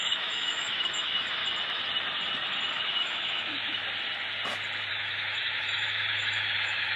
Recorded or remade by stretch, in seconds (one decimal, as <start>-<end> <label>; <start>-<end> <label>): 0.0-1.4 remade; 1.4-2.7 recorded; 2.7-3.8 remade; 3.8-4.9 recorded; 4.9-7.0 remade

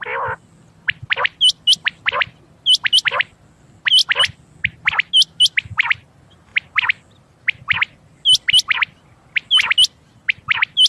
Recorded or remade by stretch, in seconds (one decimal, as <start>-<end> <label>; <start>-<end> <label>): 0.0-10.9 recorded

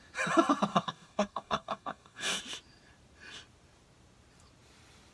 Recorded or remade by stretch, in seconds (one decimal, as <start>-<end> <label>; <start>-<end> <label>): 0.0-0.7 recorded; 0.7-2.4 remade; 2.4-5.1 recorded

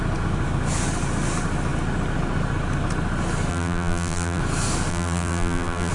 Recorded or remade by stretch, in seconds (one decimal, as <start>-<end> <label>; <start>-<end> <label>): 0.0-3.5 recorded; 3.5-4.4 remade; 4.4-4.9 recorded; 4.9-5.9 remade

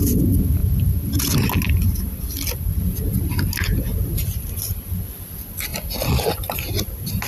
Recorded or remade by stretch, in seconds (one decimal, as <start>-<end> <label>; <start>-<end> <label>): 0.0-7.3 recorded

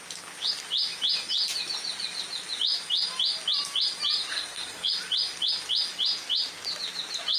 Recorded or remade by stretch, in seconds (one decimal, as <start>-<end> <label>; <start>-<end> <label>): 0.0-4.3 recorded; 4.3-4.9 remade; 4.9-7.4 recorded

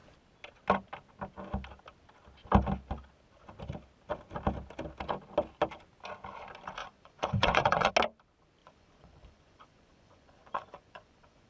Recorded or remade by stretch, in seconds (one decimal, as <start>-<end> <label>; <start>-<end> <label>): 0.0-6.8 recorded; 6.8-7.9 remade; 7.9-8.6 recorded; 8.6-11.5 remade